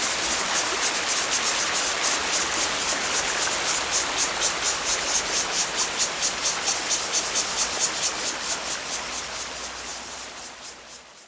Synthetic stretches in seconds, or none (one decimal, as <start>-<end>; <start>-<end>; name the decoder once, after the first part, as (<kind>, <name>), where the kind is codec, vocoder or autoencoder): 2.2-2.7 (vocoder, BigVGAN v2); 9.9-10.4